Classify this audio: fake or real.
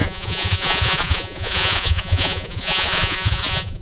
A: fake